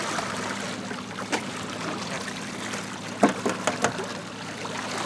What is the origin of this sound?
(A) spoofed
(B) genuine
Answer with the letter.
B